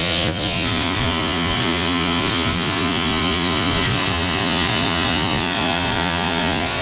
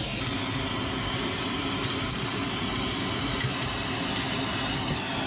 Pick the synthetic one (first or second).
first